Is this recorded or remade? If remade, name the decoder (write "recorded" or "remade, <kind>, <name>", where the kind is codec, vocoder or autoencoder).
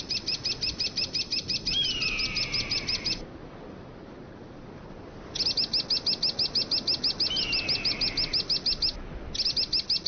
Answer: recorded